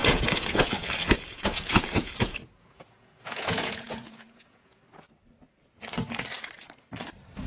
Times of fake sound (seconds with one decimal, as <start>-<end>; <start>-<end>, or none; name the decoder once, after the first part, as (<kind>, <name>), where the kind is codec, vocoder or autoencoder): 0.0-4.8 (vocoder, Vocos)